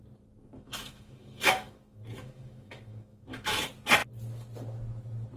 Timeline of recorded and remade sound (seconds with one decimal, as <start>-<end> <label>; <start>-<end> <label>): 0.0-0.4 recorded; 0.4-3.6 remade; 3.6-5.4 recorded